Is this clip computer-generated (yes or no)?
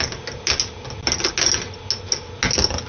no